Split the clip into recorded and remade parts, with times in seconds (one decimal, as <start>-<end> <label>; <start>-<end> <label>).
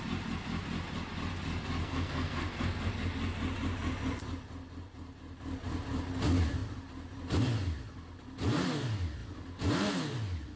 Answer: 0.0-1.8 recorded; 1.8-2.9 remade; 2.9-10.6 recorded